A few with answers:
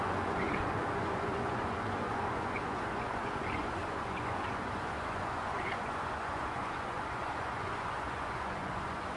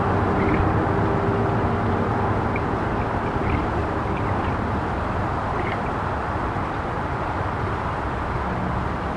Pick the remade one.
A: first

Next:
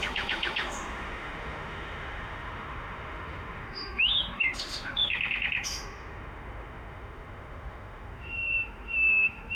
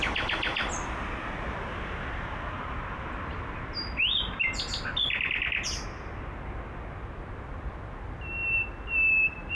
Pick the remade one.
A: first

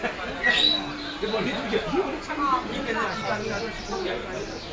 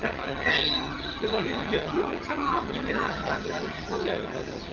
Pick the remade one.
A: second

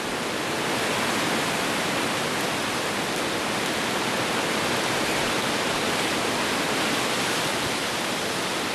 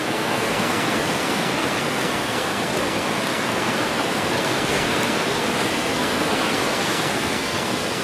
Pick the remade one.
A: second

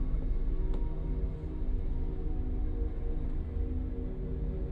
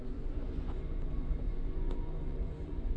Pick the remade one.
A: second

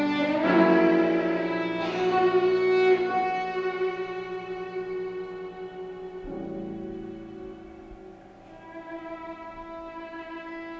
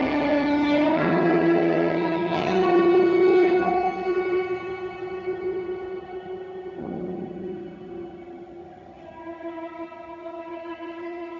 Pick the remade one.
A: second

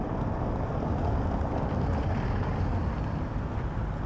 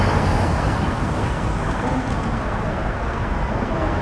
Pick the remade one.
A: second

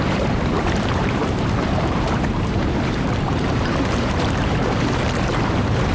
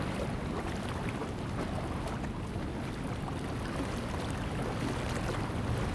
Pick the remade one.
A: first